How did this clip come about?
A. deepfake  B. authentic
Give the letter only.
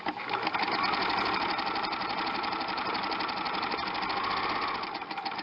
B